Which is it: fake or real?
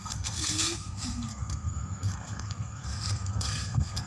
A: fake